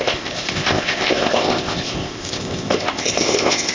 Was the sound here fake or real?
fake